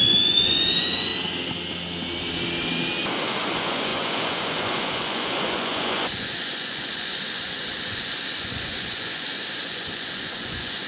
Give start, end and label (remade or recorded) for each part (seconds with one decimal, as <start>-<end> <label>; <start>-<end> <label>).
0.0-1.1 remade; 1.1-3.2 recorded; 3.2-10.9 remade